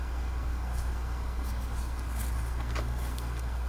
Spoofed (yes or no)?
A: yes